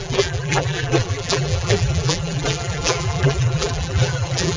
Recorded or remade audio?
remade